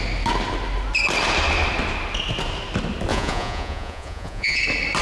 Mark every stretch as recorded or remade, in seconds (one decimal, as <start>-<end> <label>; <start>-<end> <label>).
0.0-3.1 recorded; 3.1-4.6 remade; 4.6-5.0 recorded